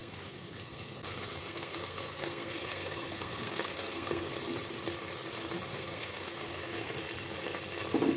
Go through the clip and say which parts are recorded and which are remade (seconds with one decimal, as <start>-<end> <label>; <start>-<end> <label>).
0.0-4.3 remade; 4.3-5.7 recorded; 5.7-7.0 remade; 7.0-8.2 recorded